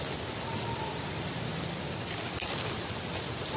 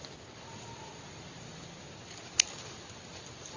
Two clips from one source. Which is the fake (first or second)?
first